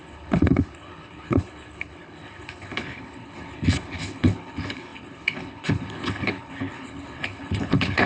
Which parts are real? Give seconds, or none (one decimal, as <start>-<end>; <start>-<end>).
none